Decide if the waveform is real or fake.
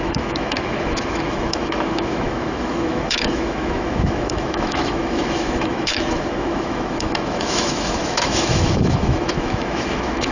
fake